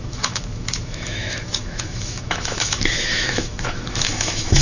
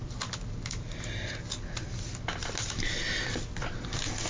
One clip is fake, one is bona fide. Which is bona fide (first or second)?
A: second